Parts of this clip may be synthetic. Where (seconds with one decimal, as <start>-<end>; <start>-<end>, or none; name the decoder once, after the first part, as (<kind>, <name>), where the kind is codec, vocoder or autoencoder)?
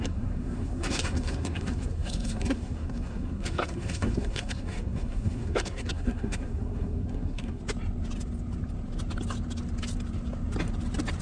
0.0-7.6 (codec, SNAC)